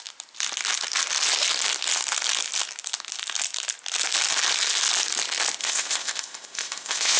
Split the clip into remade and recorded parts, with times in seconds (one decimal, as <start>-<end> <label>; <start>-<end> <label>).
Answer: 0.0-5.6 recorded; 5.6-7.2 remade